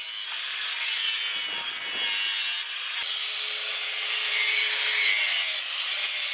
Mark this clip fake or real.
real